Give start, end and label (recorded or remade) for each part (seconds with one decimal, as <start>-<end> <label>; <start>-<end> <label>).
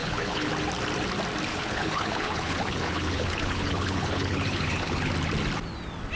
0.0-0.5 remade; 0.5-1.5 recorded; 1.5-5.1 remade; 5.1-6.2 recorded